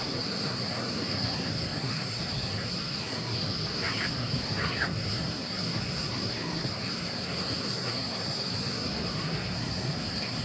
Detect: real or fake fake